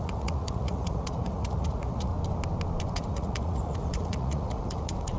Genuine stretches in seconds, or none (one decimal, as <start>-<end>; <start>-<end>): 2.1-2.9

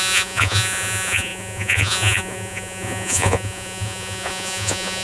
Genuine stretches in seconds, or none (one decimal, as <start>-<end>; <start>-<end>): none

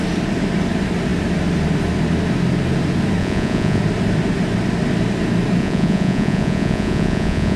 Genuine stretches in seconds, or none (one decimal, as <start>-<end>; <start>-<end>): 0.0-3.2; 3.8-5.6

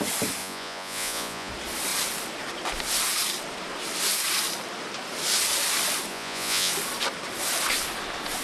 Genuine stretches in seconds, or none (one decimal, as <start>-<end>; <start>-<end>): 0.0-0.4; 1.5-6.1; 6.7-8.4

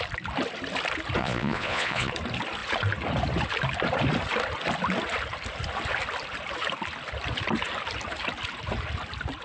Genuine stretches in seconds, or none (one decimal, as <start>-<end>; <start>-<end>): 0.0-1.2; 2.1-9.4

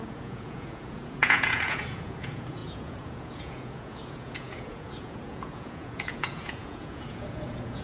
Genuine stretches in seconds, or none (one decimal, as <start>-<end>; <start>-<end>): none

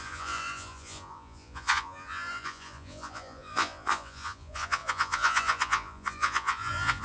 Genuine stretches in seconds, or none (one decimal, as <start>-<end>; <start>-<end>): none